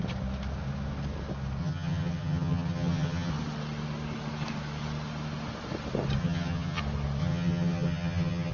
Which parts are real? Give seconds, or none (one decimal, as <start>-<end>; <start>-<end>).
0.0-1.6; 3.3-6.2; 6.8-7.2